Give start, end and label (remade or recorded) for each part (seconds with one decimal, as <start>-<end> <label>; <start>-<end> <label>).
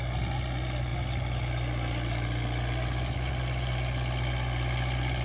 0.0-5.2 recorded